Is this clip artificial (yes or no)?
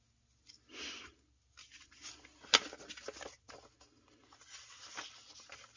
no